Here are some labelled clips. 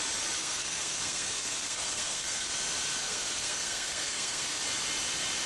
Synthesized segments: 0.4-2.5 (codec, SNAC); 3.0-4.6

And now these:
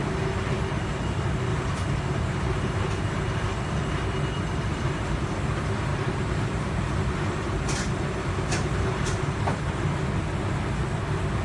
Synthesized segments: 1.5-3.1 (vocoder, BigVGAN v2); 5.9-9.8

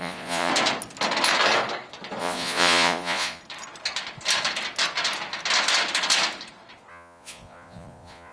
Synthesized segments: 0.0-0.5 (vocoder, Vocos); 2.2-3.4; 6.9-8.3

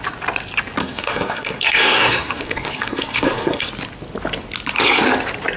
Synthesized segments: 0.8-3.7 (codec, SNAC)

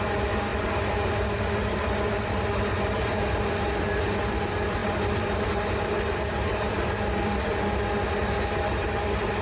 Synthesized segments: none